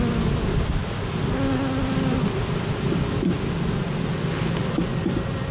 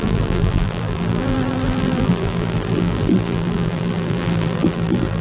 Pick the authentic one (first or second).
first